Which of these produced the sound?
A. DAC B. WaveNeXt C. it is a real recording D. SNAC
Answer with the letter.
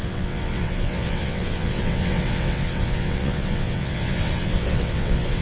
B